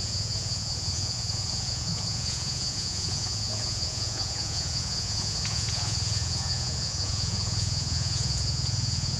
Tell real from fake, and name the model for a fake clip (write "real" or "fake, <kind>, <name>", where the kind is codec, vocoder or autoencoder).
fake, vocoder, Vocos